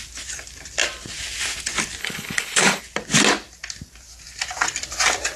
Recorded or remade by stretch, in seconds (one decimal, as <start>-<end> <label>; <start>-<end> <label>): 0.0-2.0 recorded; 2.0-2.8 remade; 2.8-5.4 recorded